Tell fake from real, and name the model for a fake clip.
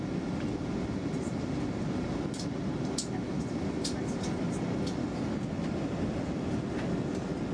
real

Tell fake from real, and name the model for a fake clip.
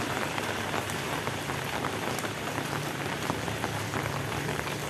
fake, vocoder, BigVGAN v2